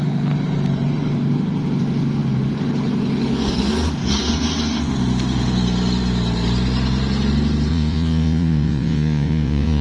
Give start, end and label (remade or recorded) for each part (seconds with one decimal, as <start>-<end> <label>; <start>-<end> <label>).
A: 0.0-7.7 recorded; 7.7-9.8 remade